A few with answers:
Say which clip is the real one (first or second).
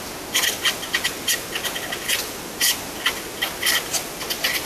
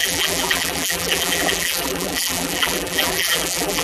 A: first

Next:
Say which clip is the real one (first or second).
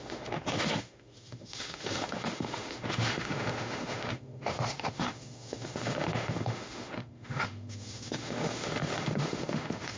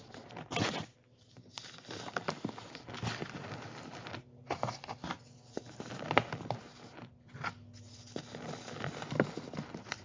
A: second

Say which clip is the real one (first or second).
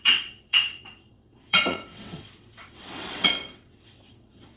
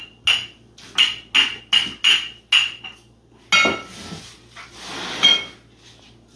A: second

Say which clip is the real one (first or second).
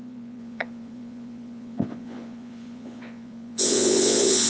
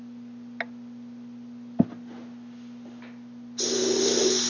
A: second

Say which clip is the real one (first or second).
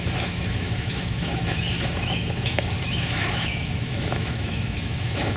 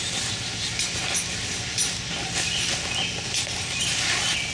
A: second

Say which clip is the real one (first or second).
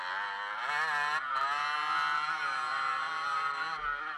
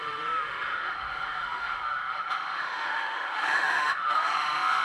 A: first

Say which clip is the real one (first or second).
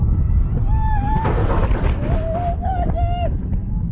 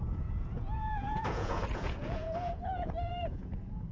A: first